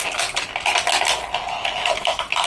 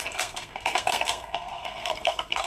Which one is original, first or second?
first